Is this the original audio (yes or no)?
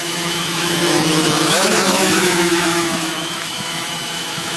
no